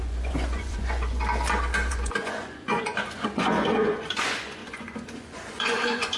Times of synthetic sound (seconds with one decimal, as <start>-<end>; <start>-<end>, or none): 0.0-1.2; 1.9-6.2